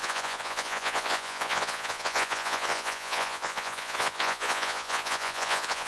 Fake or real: fake